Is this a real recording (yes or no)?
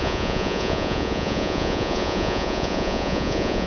no